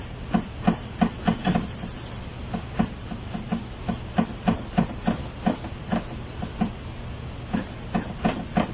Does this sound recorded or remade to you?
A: recorded